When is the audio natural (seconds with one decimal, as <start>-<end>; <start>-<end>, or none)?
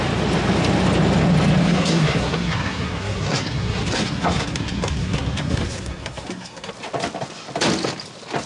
0.0-1.6; 6.7-8.5